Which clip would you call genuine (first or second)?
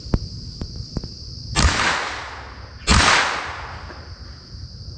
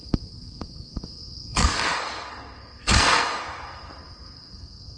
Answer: first